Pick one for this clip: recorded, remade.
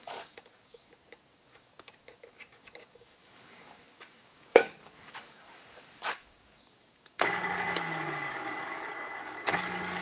remade